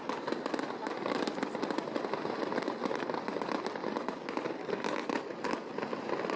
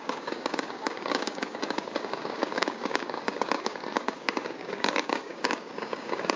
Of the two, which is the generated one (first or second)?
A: second